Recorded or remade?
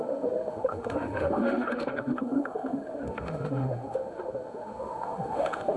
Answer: remade